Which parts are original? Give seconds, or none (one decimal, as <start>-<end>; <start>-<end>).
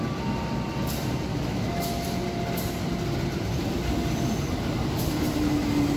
0.0-1.3; 1.9-6.0